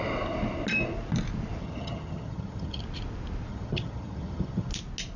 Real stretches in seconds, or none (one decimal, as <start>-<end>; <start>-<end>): 0.0-1.6; 2.8-3.5; 4.7-5.2